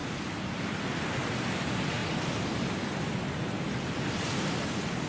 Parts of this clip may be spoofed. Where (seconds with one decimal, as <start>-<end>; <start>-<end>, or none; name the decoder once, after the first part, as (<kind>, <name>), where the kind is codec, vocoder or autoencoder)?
none